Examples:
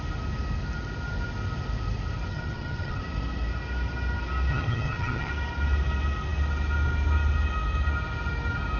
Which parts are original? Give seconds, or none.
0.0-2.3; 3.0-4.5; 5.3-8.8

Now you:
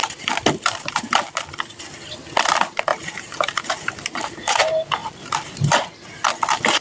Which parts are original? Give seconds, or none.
0.0-2.9; 4.6-5.0; 5.9-6.8

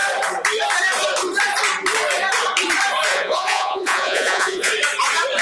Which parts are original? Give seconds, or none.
0.0-3.1; 4.7-5.4